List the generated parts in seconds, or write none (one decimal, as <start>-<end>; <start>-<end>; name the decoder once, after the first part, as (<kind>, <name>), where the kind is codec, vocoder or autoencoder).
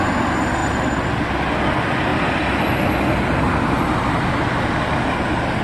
0.6-1.1 (vocoder, BigVGAN v2)